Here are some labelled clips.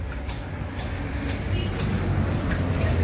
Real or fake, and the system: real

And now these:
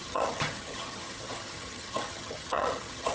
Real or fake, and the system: fake, vocoder, HiFi-GAN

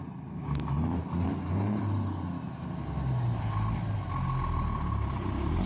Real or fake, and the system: real